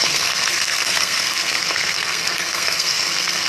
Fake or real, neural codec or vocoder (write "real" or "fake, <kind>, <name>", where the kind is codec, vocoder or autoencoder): fake, codec, SNAC